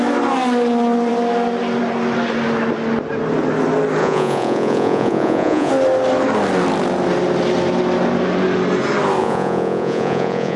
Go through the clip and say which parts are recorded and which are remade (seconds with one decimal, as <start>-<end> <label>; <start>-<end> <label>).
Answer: 0.0-4.0 recorded; 4.0-5.7 remade; 5.7-9.2 recorded; 9.2-10.6 remade